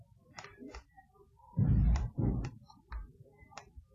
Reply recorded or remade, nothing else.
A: remade